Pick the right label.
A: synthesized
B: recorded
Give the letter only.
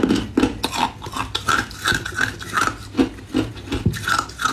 B